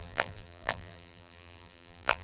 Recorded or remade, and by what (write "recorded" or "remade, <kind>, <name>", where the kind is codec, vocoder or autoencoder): remade, vocoder, BigVGAN v2